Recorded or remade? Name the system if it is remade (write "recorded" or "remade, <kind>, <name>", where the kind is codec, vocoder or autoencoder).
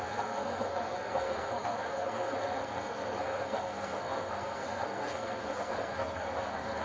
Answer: remade, codec, SNAC